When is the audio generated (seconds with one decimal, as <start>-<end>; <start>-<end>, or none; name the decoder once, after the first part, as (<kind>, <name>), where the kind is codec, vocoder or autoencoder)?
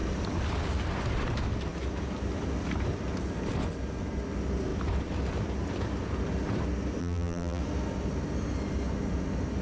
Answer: 7.0-7.6 (vocoder, BigVGAN v2)